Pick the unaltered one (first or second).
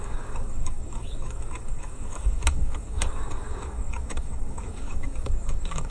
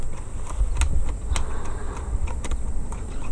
second